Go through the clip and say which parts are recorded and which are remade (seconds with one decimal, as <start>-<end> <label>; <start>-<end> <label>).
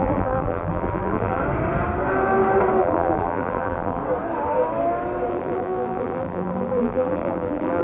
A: 0.0-1.4 remade; 1.4-2.8 recorded; 2.8-4.0 remade; 4.0-5.3 recorded; 5.3-7.8 remade